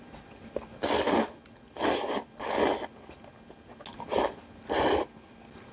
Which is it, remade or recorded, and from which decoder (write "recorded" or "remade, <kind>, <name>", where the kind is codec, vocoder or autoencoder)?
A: recorded